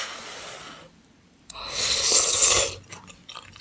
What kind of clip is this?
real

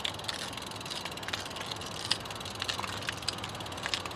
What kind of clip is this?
real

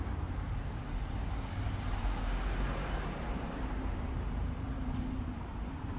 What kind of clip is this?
fake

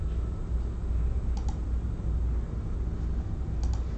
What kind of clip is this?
real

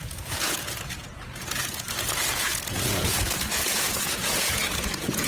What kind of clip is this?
fake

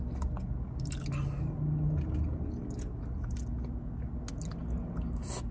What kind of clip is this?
real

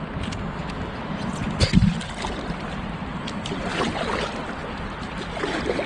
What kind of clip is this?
real